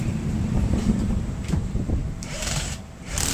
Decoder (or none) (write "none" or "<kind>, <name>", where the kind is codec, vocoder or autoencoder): vocoder, BigVGAN v2